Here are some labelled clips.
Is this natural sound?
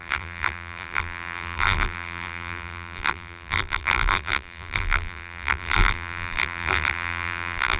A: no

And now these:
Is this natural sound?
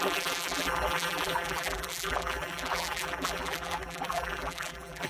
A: no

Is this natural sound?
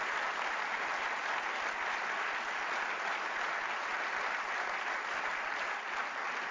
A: no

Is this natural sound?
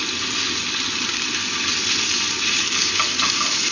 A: no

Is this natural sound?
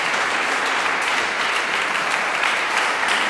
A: no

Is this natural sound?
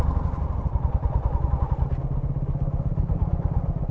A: yes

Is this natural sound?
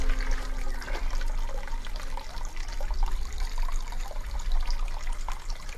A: yes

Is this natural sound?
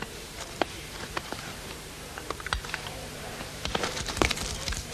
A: no